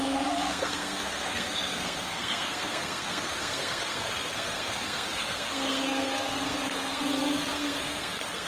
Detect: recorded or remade remade